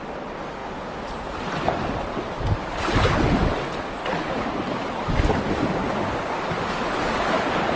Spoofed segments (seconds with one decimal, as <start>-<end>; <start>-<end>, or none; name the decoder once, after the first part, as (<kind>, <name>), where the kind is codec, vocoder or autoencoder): none